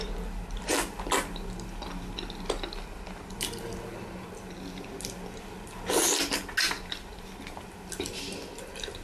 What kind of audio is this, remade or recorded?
recorded